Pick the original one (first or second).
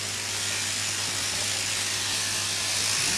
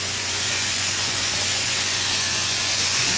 first